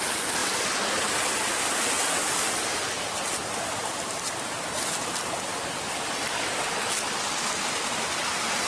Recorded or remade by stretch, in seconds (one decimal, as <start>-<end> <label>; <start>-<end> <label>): 0.0-8.7 recorded